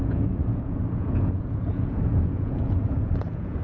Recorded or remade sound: remade